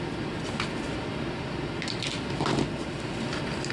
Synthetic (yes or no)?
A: no